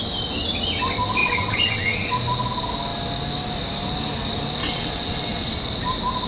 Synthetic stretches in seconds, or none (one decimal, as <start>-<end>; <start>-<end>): 1.2-2.1; 4.6-5.6